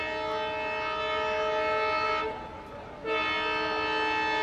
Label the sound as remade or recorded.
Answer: recorded